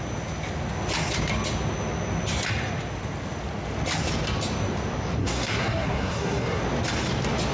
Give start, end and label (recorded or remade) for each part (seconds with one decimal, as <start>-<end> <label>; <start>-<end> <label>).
0.0-5.2 recorded; 5.2-6.6 remade; 6.6-7.5 recorded